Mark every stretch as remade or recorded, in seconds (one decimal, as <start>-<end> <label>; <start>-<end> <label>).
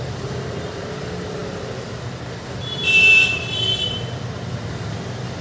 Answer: 0.0-1.4 remade; 1.4-2.0 recorded; 2.0-5.4 remade